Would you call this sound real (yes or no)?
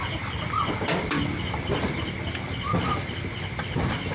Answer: no